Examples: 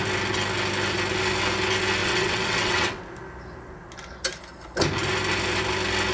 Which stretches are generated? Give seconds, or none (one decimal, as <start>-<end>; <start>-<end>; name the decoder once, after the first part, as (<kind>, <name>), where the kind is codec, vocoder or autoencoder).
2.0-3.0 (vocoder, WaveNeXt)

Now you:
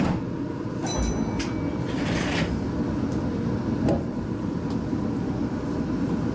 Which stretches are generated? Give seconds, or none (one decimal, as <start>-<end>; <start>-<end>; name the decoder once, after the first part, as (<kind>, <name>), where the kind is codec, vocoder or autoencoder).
none

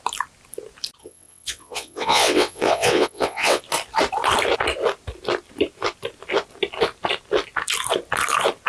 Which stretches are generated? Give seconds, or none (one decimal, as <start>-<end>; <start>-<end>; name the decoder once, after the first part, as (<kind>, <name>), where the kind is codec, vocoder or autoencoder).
1.0-3.6 (vocoder, WaveNeXt)

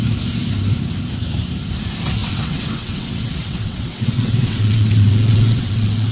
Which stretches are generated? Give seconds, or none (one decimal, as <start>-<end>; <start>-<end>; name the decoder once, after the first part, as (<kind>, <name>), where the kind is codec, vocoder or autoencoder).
2.2-6.1 (vocoder, WaveNeXt)

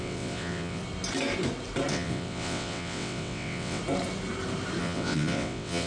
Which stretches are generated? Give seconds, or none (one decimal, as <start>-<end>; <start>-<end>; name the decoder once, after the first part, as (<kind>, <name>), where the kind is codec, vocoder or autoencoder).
0.0-0.8 (vocoder, WaveNeXt); 1.9-3.8; 4.8-5.9

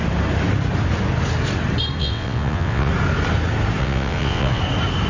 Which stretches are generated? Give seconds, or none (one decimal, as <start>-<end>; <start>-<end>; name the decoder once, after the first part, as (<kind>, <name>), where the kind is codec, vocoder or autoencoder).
2.0-2.9 (vocoder, WaveNeXt); 3.8-4.6

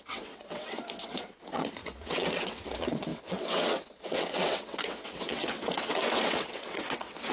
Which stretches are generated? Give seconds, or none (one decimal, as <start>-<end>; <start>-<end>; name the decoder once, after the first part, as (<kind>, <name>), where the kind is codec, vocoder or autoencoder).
0.0-7.3 (vocoder, WaveNeXt)